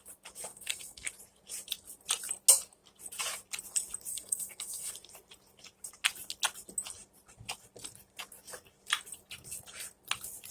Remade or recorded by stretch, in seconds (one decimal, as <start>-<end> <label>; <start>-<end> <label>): 0.0-0.5 recorded; 0.5-1.1 remade; 1.1-4.1 recorded; 4.1-4.9 remade; 4.9-10.5 recorded